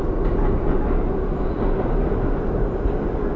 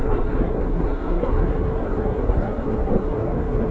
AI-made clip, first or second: second